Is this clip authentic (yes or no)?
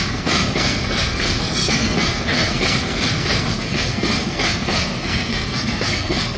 no